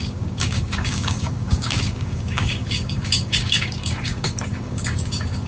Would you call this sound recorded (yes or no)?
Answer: no